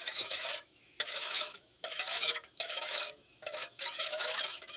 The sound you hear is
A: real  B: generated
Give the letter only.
B